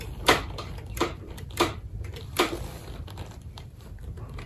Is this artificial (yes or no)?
yes